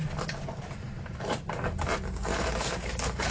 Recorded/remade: remade